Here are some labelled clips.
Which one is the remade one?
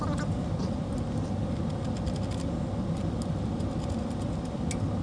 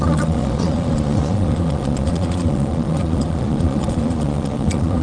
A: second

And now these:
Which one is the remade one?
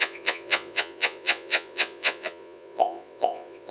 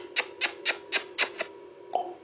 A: first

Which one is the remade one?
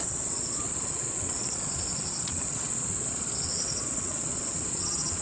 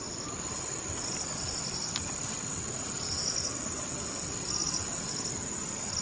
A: first